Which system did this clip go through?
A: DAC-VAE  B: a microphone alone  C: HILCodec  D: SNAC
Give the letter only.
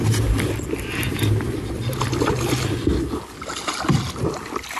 B